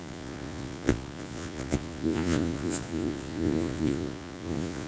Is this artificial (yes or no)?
yes